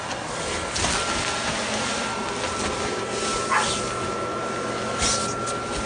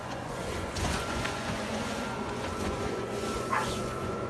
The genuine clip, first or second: first